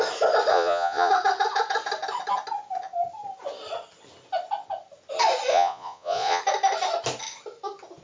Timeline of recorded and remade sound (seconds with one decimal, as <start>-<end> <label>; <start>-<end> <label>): 0.0-0.5 recorded; 0.5-1.1 remade; 1.1-5.5 recorded; 5.5-6.4 remade; 6.4-8.0 recorded